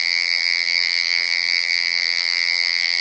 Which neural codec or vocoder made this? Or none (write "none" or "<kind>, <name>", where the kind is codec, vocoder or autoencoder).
vocoder, BigVGAN v2